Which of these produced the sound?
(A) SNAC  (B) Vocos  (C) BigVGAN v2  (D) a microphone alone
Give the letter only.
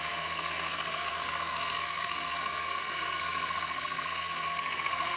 A